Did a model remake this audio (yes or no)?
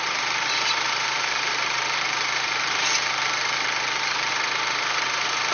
yes